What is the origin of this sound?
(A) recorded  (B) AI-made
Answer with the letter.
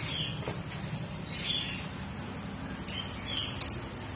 A